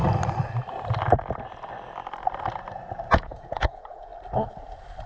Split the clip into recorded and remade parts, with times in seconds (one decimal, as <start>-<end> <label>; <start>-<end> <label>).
0.0-3.1 recorded; 3.1-4.1 remade; 4.1-5.1 recorded